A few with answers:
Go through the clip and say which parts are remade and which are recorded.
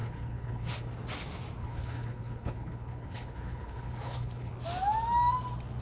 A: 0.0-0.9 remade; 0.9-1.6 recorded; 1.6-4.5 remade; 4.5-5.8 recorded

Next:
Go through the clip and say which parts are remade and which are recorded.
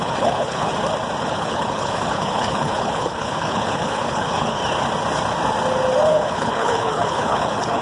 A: 0.0-0.7 remade; 0.7-1.2 recorded; 1.2-4.6 remade; 4.6-6.1 recorded; 6.1-7.8 remade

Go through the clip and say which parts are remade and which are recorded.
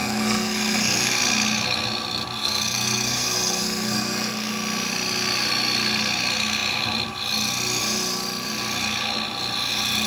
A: 0.0-1.2 remade; 1.2-2.4 recorded; 2.4-4.5 remade; 4.5-10.1 recorded